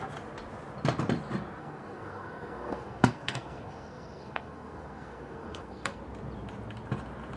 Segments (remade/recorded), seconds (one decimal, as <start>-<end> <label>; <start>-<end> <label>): 0.0-1.6 recorded; 1.6-6.0 remade; 6.0-7.4 recorded